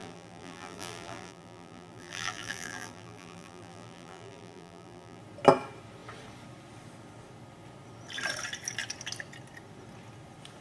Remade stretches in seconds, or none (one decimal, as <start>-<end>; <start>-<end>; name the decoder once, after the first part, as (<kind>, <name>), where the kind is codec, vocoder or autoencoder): 0.0-5.2 (vocoder, BigVGAN v2)

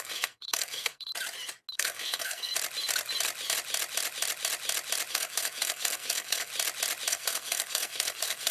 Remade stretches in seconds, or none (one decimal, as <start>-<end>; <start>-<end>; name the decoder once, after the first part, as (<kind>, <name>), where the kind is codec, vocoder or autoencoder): 0.0-1.1 (codec, SNAC); 1.7-2.5; 5.1-6.5; 7.1-8.5

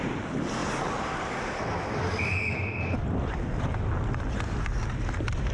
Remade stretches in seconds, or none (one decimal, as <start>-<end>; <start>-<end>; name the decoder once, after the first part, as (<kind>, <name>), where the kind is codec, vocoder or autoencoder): 0.6-2.4 (vocoder, BigVGAN v2)

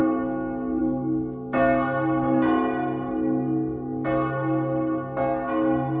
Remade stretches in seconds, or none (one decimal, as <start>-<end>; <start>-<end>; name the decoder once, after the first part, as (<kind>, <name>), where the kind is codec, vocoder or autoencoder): none

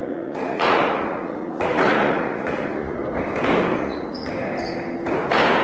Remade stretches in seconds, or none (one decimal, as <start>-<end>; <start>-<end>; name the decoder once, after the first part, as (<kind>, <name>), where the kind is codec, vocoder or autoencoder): 0.0-3.0 (vocoder, Vocos); 3.7-4.3

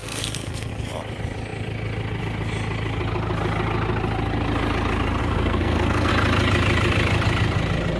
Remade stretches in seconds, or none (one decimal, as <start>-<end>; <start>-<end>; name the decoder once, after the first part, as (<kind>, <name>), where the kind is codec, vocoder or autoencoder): 0.0-0.7 (codec, SNAC); 5.2-6.1